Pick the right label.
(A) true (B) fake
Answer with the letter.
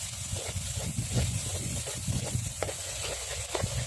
B